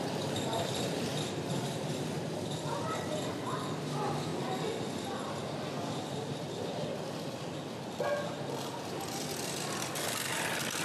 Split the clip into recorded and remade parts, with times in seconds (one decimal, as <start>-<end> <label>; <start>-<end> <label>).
0.0-10.8 recorded